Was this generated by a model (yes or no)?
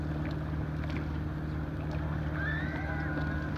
no